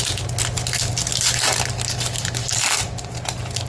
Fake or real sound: real